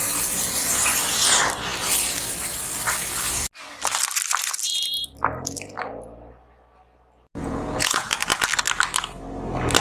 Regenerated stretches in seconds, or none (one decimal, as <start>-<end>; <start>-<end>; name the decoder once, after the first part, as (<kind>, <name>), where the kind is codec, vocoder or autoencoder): 7.4-8.1 (vocoder, Vocos)